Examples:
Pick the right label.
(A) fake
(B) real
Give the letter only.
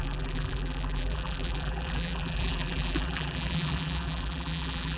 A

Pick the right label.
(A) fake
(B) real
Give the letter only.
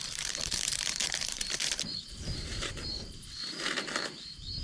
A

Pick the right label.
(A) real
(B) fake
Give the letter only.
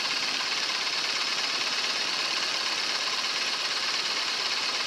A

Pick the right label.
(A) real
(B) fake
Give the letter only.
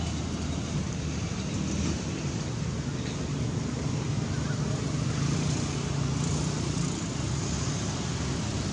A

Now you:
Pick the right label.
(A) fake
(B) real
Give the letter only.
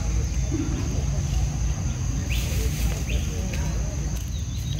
B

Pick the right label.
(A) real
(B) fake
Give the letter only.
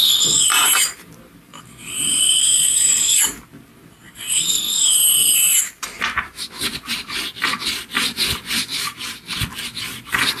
B